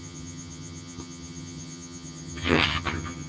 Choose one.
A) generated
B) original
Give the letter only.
A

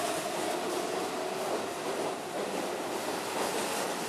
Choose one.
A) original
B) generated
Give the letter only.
A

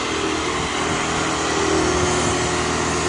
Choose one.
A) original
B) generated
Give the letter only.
A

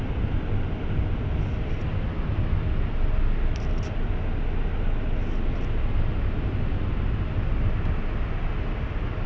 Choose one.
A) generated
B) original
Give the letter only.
B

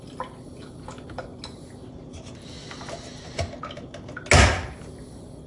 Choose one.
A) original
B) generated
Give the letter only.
A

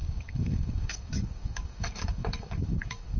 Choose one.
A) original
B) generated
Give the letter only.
B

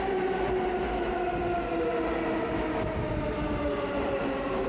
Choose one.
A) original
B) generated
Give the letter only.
A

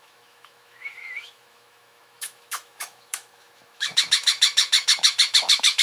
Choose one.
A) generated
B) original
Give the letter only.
A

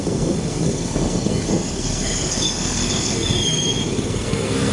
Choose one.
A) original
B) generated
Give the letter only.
B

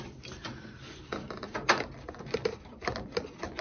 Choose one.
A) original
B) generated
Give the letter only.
A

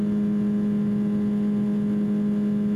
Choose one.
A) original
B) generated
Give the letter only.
A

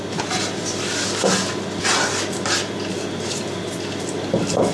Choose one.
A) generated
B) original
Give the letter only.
B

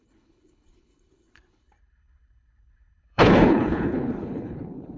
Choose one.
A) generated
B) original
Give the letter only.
A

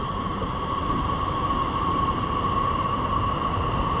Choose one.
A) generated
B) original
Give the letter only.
A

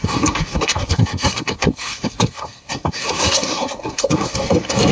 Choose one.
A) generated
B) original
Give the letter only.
A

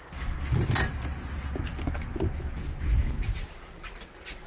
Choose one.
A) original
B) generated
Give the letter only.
A